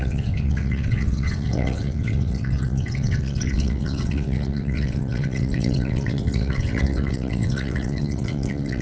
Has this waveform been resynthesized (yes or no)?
yes